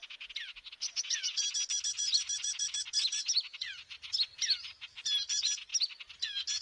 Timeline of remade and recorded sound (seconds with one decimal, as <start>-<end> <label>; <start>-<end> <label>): 0.0-2.0 recorded; 2.0-4.1 remade; 4.1-6.6 recorded